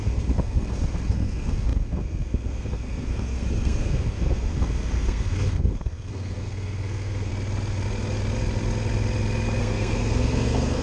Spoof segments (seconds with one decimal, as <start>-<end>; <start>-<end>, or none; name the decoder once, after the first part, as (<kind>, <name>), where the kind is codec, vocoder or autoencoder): 0.0-7.3 (codec, SNAC); 9.6-10.8